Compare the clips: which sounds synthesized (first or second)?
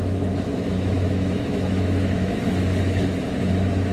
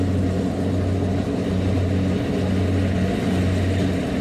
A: first